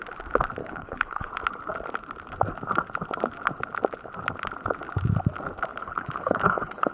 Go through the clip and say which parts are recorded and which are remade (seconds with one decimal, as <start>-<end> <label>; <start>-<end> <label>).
0.0-0.6 recorded; 0.6-1.3 remade; 1.3-5.7 recorded; 5.7-6.9 remade